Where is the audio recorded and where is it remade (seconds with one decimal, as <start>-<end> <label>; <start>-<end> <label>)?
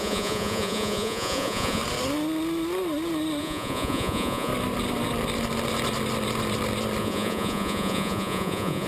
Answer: 0.0-1.8 remade; 1.8-3.4 recorded; 3.4-4.5 remade; 4.5-7.0 recorded; 7.0-8.9 remade